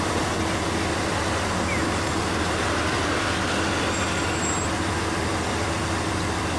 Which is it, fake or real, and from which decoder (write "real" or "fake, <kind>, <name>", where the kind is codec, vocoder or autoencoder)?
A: real